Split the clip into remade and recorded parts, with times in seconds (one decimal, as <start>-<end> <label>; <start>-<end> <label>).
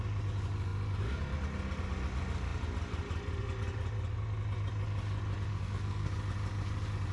0.0-5.5 recorded; 5.5-6.1 remade; 6.1-7.1 recorded